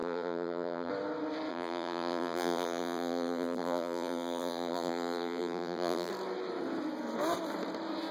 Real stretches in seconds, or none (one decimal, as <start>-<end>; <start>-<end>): 0.9-1.5; 6.1-8.1